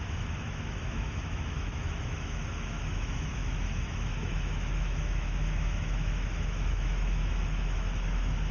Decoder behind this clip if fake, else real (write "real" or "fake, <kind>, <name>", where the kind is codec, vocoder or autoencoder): fake, autoencoder, DAC-VAE